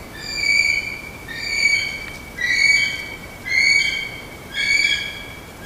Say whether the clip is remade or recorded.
recorded